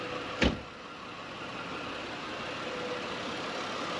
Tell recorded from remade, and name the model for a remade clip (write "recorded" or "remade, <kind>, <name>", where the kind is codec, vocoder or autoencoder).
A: recorded